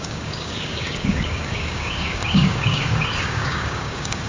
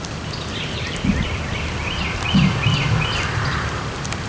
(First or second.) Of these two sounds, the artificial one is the first